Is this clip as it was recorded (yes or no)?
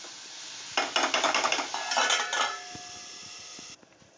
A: yes